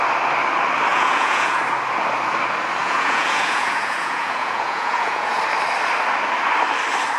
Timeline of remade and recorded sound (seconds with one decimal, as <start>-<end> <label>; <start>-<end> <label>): 0.0-0.9 recorded; 0.9-1.6 remade; 1.6-2.8 recorded; 2.8-5.4 remade; 5.4-7.2 recorded